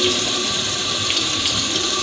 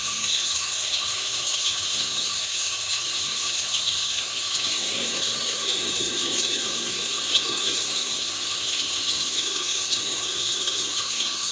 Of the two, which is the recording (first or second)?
first